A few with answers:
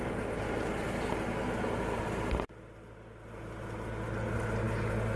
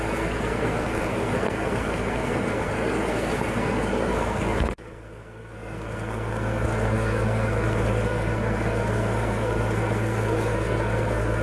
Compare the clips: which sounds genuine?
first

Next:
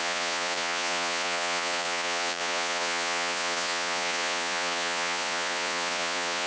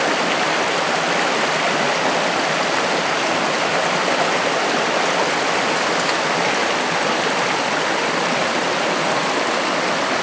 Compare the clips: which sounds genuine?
second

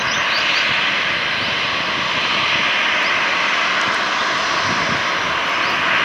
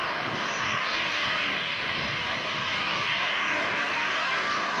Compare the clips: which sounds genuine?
first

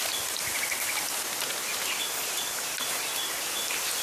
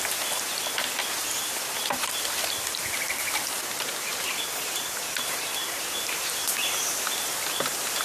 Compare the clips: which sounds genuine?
first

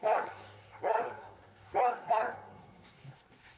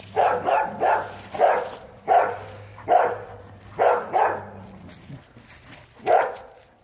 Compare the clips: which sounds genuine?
second